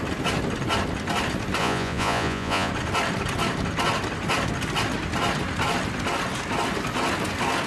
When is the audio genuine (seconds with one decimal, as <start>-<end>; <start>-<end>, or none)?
0.0-1.6; 2.7-7.7